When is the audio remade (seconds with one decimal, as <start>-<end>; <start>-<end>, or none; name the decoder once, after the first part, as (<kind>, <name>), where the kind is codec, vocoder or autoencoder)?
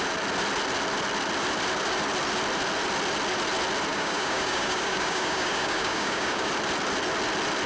3.9-6.5 (codec, DAC)